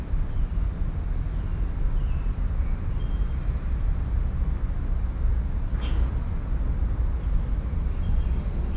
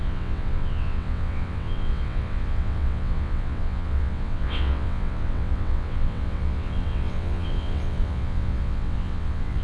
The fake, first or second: second